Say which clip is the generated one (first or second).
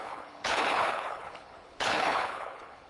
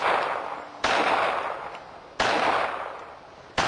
first